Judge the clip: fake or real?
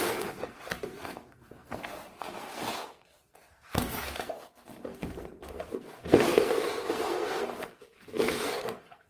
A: fake